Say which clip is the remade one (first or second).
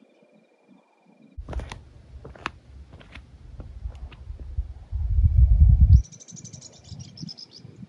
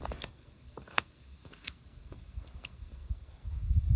second